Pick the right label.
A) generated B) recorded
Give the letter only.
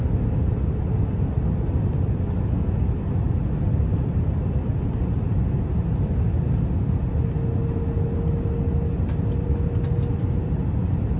B